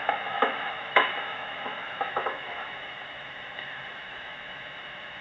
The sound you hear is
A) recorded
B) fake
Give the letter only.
B